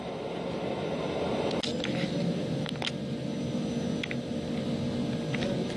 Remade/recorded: recorded